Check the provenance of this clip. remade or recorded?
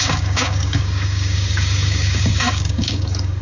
remade